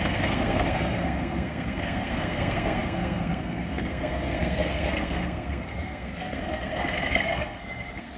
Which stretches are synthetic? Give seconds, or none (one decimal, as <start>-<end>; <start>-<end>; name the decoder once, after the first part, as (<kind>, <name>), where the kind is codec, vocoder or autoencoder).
0.0-8.2 (codec, SNAC)